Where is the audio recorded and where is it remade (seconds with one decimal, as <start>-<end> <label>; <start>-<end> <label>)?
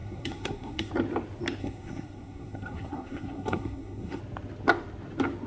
0.0-0.9 remade; 0.9-1.6 recorded; 1.6-4.2 remade; 4.2-5.5 recorded